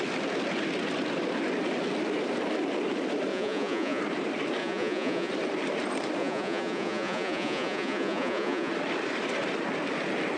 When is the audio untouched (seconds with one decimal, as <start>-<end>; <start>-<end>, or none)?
0.0-3.3; 4.0-4.6; 5.3-6.2; 8.7-10.4